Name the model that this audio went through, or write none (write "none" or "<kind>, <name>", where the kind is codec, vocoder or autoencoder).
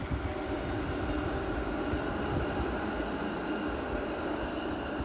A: none